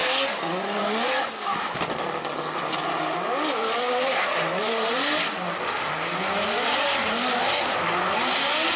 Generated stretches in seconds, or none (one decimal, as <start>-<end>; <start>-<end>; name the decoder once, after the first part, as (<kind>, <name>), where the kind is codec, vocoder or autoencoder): none